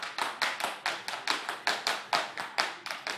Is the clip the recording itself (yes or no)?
yes